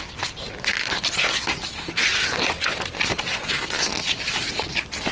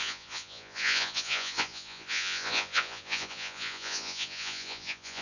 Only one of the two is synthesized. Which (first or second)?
second